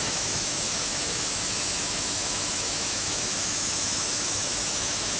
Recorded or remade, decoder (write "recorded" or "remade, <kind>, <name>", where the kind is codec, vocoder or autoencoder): remade, autoencoder, DAC-VAE